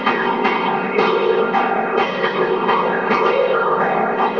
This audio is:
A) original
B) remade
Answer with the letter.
B